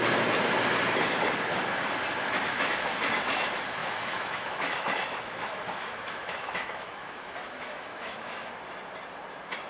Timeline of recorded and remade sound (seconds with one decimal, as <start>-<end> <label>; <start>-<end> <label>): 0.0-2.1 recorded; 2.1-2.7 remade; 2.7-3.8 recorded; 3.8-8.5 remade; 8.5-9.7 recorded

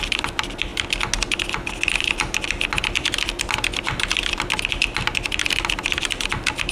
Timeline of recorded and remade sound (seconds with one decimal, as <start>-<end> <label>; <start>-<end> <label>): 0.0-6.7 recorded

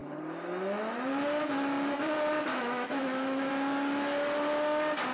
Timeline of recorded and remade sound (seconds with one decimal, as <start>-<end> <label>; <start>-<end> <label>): 0.0-2.5 recorded; 2.5-3.5 remade; 3.5-5.1 recorded

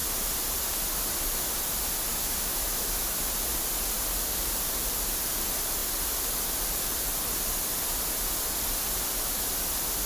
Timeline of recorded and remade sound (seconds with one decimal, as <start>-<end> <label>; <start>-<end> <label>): 0.0-2.1 recorded; 2.1-3.3 remade; 3.3-10.1 recorded